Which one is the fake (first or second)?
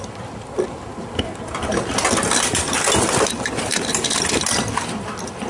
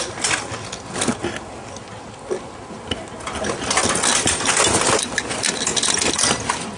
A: first